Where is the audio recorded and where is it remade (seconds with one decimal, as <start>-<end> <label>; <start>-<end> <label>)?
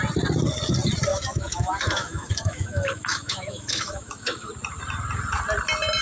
0.0-1.1 recorded; 1.1-4.5 remade; 4.5-6.0 recorded